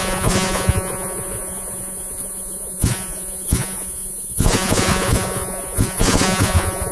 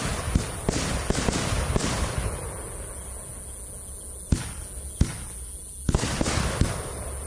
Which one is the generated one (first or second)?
first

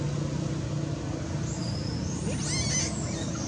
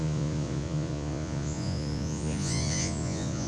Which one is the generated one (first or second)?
second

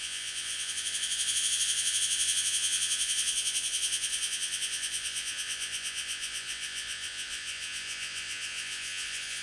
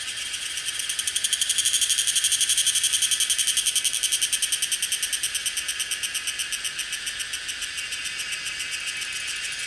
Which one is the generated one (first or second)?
first